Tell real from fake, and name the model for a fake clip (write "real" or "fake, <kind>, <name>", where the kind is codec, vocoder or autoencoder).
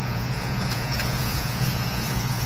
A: fake, vocoder, Vocos